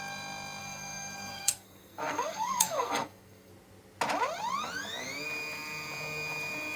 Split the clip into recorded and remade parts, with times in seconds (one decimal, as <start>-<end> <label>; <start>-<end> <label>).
0.0-0.6 recorded; 0.6-3.5 remade; 3.5-6.8 recorded